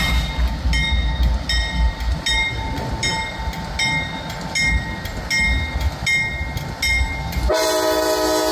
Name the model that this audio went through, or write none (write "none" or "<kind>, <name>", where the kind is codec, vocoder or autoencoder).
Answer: none